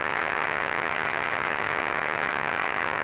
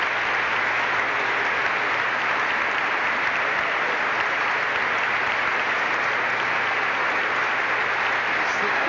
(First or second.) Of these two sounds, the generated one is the first